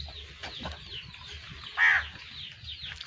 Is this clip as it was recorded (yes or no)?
yes